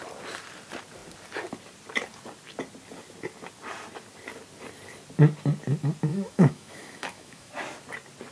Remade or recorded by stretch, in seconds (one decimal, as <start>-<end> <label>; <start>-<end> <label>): 0.0-6.1 recorded; 6.1-7.5 remade; 7.5-8.3 recorded